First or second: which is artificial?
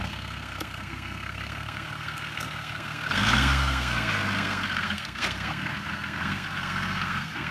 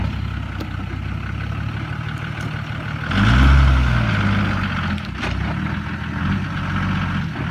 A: first